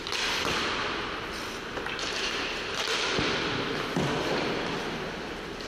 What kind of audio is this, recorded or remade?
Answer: recorded